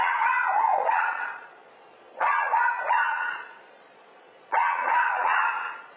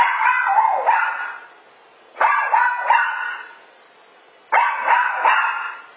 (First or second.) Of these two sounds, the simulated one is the first